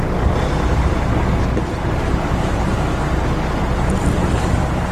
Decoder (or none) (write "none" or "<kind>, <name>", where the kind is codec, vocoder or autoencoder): none